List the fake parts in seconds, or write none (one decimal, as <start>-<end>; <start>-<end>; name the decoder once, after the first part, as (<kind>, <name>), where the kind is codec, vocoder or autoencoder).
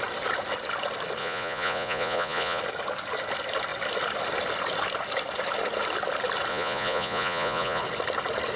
1.2-2.6 (vocoder, Vocos); 6.5-7.8